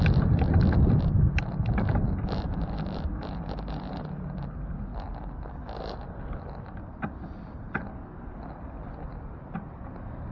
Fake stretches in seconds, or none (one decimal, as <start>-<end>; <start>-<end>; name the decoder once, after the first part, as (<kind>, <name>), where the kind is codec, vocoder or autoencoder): 9.1-10.3 (vocoder, BigVGAN v2)